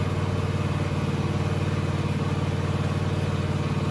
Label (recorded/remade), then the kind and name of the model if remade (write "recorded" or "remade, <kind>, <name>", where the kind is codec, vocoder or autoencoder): recorded